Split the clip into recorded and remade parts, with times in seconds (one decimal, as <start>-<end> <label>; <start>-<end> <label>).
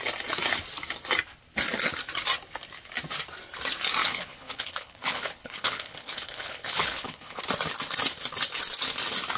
0.0-4.0 recorded; 4.0-7.4 remade; 7.4-9.4 recorded